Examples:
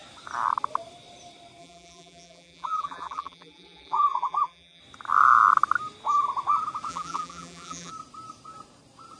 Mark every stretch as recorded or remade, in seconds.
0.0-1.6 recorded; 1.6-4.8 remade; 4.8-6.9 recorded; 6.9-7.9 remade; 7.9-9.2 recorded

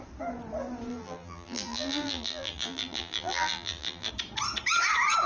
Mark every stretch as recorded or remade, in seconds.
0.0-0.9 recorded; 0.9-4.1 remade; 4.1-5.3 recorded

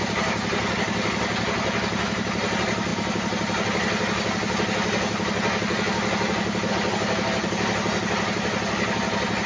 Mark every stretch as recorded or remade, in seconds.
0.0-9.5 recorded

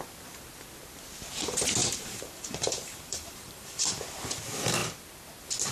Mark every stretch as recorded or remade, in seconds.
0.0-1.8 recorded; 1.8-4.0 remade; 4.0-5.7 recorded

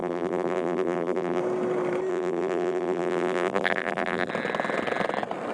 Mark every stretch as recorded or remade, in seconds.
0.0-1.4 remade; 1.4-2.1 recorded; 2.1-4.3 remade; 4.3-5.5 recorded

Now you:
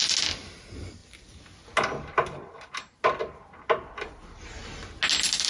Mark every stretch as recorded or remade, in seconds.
0.0-5.5 recorded

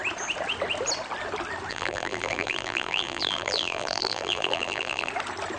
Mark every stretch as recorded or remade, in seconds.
0.0-1.7 recorded; 1.7-5.1 remade; 5.1-5.6 recorded